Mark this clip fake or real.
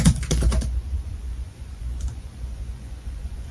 fake